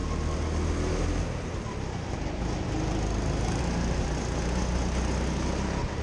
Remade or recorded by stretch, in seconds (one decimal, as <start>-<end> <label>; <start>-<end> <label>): 0.0-6.0 recorded